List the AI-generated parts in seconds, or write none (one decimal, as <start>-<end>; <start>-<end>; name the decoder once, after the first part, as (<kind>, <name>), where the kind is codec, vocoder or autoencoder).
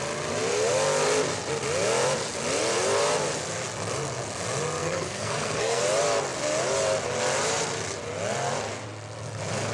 4.8-5.8 (codec, SNAC)